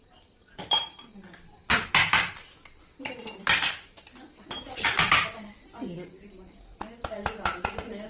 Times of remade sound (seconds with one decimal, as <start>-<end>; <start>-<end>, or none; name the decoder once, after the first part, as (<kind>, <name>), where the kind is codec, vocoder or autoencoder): none

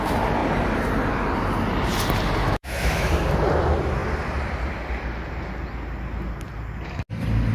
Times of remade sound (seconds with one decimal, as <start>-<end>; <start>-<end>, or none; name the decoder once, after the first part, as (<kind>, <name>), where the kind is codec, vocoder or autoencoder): 2.4-3.1 (autoencoder, DAC-VAE)

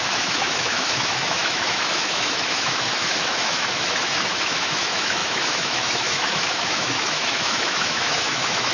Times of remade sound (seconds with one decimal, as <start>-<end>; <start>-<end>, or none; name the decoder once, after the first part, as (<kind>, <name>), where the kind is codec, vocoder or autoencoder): 0.0-8.7 (autoencoder, DAC-VAE)

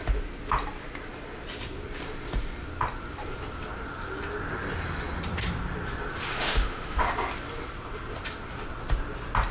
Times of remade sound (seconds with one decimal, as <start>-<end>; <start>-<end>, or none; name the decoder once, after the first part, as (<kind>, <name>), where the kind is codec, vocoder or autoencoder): 6.3-7.0 (autoencoder, DAC-VAE)

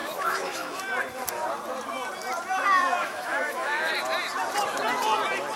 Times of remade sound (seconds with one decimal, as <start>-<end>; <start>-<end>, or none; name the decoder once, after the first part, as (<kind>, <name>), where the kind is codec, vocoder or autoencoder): 0.0-0.8 (autoencoder, DAC-VAE); 3.0-3.9

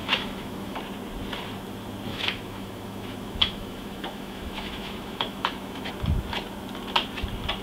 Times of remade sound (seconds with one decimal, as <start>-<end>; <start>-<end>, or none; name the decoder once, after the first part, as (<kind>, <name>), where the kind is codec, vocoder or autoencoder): 0.0-0.8 (autoencoder, DAC-VAE); 2.1-5.9

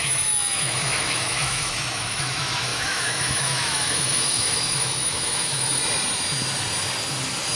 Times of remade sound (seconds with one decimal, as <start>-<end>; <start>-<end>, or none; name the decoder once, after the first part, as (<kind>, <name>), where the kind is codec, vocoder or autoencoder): 0.0-5.8 (autoencoder, DAC-VAE)